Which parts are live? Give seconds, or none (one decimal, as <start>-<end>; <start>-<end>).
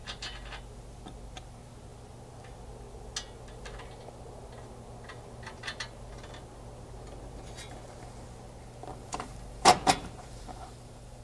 0.0-8.9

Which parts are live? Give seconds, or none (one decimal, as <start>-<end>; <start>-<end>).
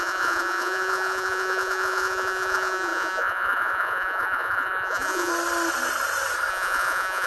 5.3-6.5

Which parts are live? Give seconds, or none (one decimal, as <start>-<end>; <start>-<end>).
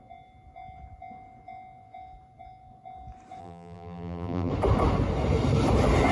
0.0-3.4; 4.5-6.1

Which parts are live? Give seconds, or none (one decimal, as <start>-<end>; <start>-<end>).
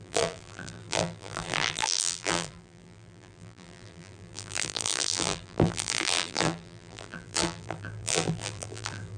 none